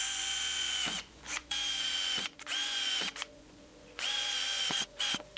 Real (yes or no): no